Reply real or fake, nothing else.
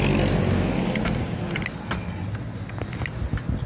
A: real